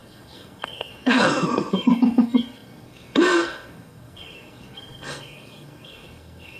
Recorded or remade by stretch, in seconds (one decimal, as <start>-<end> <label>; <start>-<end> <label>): 0.0-6.6 remade